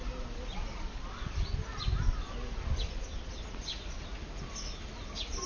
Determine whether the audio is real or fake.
real